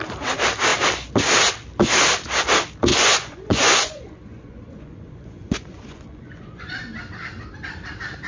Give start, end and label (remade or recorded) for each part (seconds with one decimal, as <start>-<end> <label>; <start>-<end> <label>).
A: 0.0-2.9 recorded; 2.9-6.7 remade; 6.7-8.3 recorded